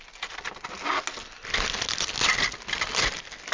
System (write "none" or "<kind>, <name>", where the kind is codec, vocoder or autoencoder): none